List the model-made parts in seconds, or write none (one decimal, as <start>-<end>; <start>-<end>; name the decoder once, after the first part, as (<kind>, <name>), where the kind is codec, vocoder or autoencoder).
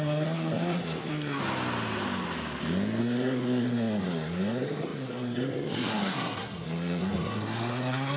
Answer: 0.0-1.4 (codec, SNAC); 3.0-8.2